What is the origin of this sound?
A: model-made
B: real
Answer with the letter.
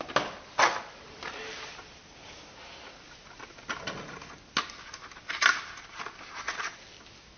B